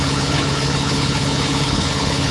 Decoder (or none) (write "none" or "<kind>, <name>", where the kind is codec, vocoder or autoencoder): codec, HILCodec